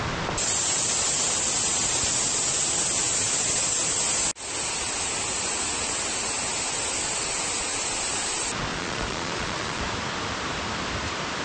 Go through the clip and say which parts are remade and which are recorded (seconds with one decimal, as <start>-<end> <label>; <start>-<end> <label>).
0.0-8.7 recorded; 8.7-9.8 remade; 9.8-11.4 recorded